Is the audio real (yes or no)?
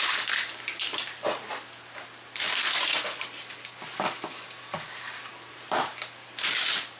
yes